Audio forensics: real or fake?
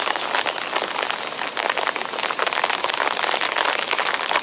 real